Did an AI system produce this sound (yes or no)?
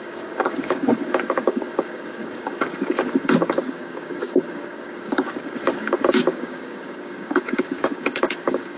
yes